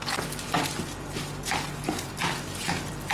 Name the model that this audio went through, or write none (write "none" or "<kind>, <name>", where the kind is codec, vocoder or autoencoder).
none